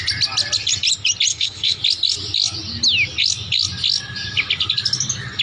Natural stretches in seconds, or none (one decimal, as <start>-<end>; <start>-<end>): 0.0-1.3; 1.8-5.4